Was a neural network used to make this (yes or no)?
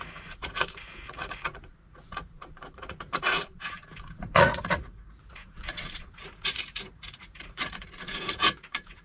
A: yes